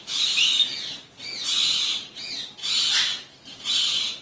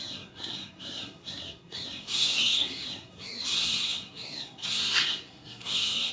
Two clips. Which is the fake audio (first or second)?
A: second